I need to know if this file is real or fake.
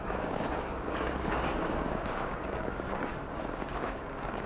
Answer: fake